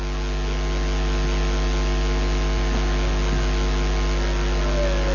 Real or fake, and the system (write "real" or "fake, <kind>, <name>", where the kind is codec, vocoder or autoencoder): real